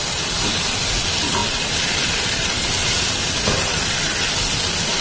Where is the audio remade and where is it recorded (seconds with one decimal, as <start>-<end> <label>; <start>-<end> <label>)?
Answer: 0.0-5.0 recorded